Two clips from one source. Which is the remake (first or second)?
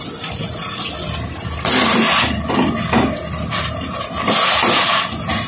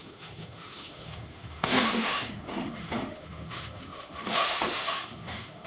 second